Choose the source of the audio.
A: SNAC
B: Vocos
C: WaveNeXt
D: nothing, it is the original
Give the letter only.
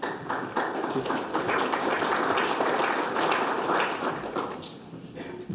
D